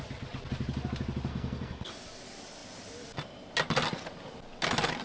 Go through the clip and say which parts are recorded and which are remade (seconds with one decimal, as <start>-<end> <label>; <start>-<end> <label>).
0.0-1.3 recorded; 1.3-1.9 remade; 1.9-5.0 recorded